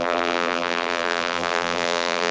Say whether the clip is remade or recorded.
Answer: remade